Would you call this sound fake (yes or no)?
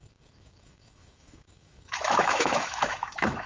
yes